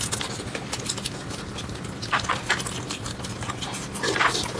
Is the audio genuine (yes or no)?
yes